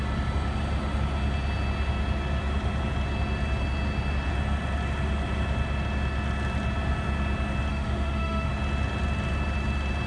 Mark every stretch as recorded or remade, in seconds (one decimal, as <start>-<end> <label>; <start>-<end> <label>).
0.0-7.7 recorded; 7.7-8.5 remade; 8.5-10.1 recorded